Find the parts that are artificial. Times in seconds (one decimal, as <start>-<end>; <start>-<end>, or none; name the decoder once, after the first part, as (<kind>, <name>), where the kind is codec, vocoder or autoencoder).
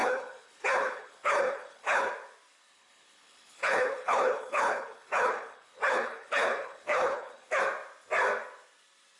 0.0-2.1 (codec, HILCodec); 2.7-7.6